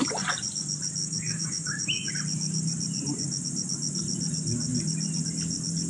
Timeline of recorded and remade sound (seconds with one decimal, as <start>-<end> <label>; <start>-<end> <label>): 0.0-1.0 recorded; 1.0-2.1 remade; 2.1-5.9 recorded